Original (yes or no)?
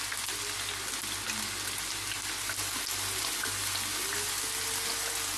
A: yes